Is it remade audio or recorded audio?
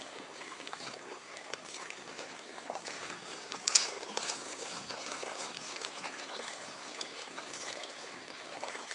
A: remade